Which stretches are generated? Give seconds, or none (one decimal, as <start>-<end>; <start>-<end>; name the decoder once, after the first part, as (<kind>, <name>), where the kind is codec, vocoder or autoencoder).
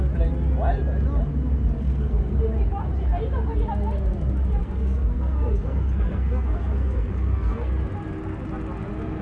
1.8-2.4 (codec, SNAC); 4.6-7.7